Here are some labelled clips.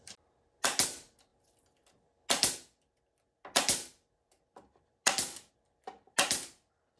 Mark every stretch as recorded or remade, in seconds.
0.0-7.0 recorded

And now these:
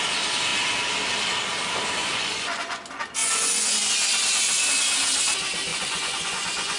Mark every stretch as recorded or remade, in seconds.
0.0-2.0 recorded; 2.0-2.8 remade; 2.8-3.2 recorded; 3.2-3.9 remade; 3.9-5.7 recorded; 5.7-6.8 remade

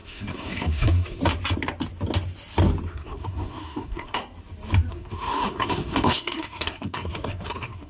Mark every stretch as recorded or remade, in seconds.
0.0-1.2 remade; 1.2-2.9 recorded; 2.9-4.2 remade; 4.2-4.9 recorded; 4.9-7.9 remade